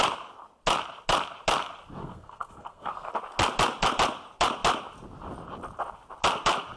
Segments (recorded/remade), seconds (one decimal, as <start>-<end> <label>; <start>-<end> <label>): 0.0-2.0 recorded; 2.0-3.1 remade; 3.1-6.8 recorded

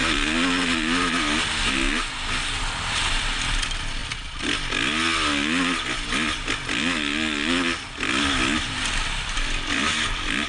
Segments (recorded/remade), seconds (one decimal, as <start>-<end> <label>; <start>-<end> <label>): 0.0-10.5 recorded

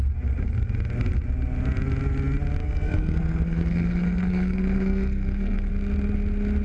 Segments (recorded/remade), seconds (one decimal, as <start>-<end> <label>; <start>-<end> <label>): 0.0-2.6 recorded; 2.6-5.7 remade; 5.7-6.6 recorded

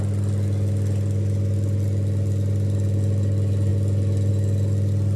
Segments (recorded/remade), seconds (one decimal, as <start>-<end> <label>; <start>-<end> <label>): 0.0-5.2 recorded

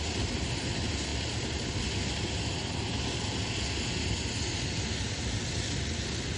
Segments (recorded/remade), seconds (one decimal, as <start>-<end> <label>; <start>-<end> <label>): 0.0-6.4 recorded

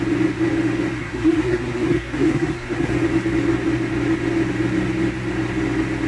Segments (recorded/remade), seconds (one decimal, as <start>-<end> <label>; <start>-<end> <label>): 0.0-1.0 recorded; 1.0-2.9 remade; 2.9-6.1 recorded